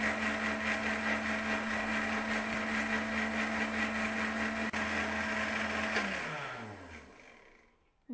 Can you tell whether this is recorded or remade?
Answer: recorded